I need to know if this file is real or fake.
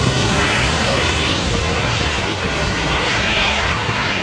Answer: fake